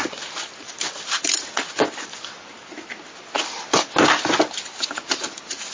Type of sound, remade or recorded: recorded